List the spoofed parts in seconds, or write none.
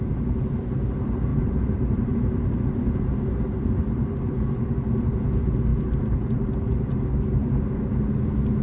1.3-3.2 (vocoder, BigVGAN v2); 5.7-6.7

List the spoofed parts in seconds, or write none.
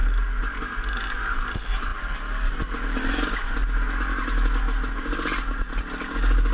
none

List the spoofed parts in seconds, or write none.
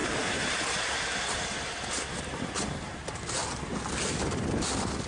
0.0-1.4 (vocoder, BigVGAN v2)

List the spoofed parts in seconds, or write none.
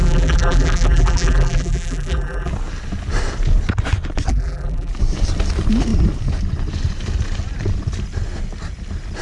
0.0-2.5 (vocoder, BigVGAN v2); 4.3-4.9